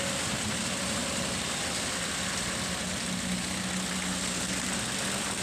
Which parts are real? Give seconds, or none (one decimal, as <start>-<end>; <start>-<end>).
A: 0.0-1.0; 2.2-5.4